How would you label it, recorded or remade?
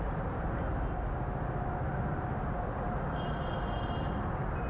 recorded